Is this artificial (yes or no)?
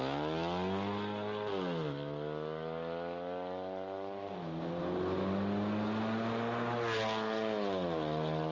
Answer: no